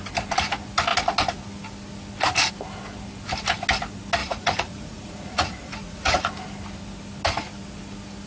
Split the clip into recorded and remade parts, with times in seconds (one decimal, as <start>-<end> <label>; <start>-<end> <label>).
0.0-4.2 recorded; 4.2-6.3 remade; 6.3-8.3 recorded